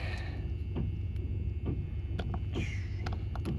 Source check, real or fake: real